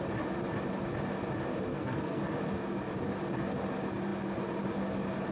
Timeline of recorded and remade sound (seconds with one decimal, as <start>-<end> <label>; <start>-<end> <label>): 0.0-1.7 recorded; 1.7-2.2 remade; 2.2-5.3 recorded